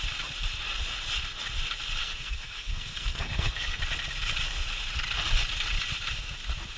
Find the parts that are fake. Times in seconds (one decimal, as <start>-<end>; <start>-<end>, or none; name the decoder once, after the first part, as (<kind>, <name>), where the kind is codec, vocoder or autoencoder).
2.0-3.8 (codec, SNAC)